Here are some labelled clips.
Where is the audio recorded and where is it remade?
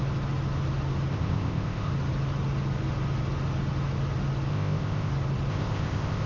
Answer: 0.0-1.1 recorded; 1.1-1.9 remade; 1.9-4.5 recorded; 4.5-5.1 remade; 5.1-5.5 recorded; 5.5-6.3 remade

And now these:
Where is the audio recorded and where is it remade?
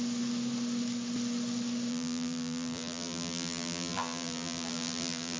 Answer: 0.0-1.9 recorded; 1.9-5.4 remade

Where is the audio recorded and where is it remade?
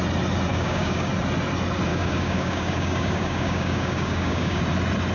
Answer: 0.0-0.5 recorded; 0.5-1.1 remade; 1.1-1.9 recorded; 1.9-4.6 remade; 4.6-5.1 recorded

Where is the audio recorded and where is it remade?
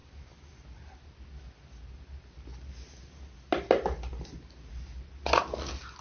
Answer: 0.0-6.0 recorded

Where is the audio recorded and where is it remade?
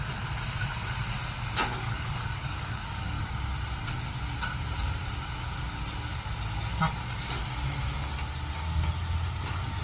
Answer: 0.0-1.7 recorded; 1.7-3.2 remade; 3.2-9.8 recorded